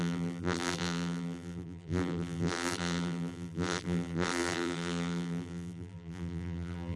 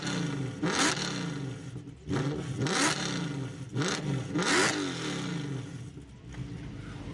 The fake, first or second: first